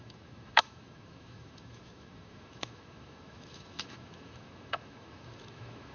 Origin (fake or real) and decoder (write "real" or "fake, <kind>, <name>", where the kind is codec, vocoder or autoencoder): fake, autoencoder, DAC-VAE